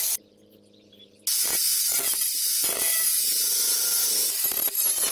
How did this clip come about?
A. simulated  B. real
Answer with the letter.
B